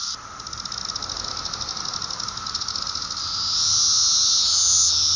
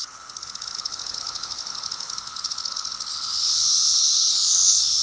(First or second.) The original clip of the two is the first